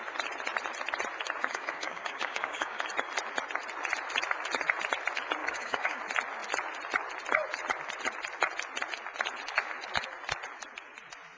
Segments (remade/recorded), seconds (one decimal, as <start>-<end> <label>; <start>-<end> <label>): 0.0-1.4 recorded; 1.4-2.8 remade; 2.8-5.4 recorded; 5.4-6.0 remade; 6.0-11.4 recorded